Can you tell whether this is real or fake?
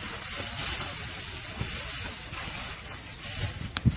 real